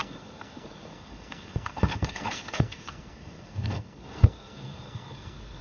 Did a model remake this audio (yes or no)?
yes